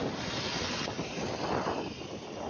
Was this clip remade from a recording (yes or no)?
no